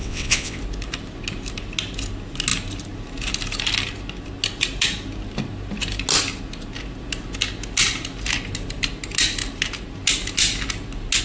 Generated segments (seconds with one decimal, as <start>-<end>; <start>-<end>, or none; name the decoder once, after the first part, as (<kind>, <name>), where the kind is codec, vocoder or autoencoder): 0.0-0.6 (vocoder, WaveNeXt)